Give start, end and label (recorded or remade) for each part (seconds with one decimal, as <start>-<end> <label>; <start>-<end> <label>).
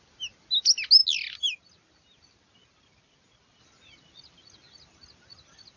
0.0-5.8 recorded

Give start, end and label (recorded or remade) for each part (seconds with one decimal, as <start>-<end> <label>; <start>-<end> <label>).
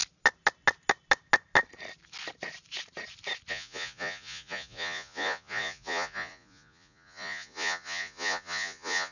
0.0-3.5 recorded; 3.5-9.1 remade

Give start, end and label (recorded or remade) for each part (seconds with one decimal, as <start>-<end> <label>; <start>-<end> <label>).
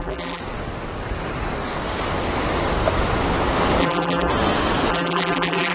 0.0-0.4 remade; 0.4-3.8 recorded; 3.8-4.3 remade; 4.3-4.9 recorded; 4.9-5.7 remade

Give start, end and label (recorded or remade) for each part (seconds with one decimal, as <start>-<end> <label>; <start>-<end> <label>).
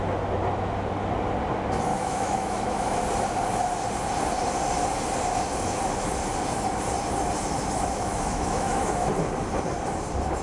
0.0-1.9 recorded; 1.9-3.0 remade; 3.0-7.8 recorded; 7.8-9.1 remade; 9.1-10.4 recorded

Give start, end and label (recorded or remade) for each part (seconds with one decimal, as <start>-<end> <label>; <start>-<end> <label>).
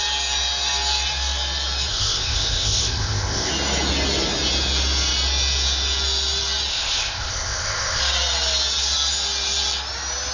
0.0-1.9 recorded; 1.9-3.5 remade; 3.5-6.7 recorded; 6.7-8.0 remade; 8.0-10.3 recorded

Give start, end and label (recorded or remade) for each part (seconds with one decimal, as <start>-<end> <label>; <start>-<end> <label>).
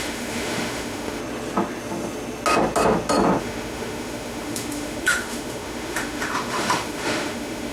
0.0-1.2 remade; 1.2-3.4 recorded; 3.4-7.7 remade